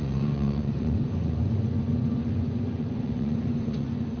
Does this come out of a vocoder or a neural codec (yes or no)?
yes